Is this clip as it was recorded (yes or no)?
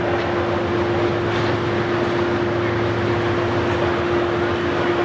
yes